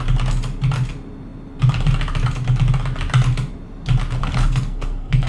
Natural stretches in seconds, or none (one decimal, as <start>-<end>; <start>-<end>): 0.0-4.2